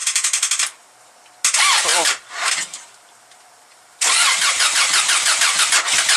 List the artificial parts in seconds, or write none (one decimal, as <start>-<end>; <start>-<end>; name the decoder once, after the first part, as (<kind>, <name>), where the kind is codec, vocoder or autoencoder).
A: 0.0-1.3 (vocoder, BigVGAN v2); 1.9-5.6